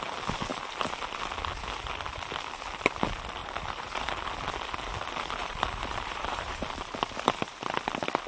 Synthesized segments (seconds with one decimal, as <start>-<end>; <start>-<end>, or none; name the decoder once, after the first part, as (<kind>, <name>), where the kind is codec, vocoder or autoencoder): 3.4-4.1 (vocoder, BigVGAN v2); 5.4-6.7